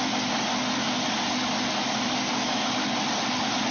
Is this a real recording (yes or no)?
yes